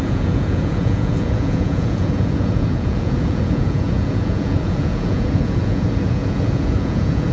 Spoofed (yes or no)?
yes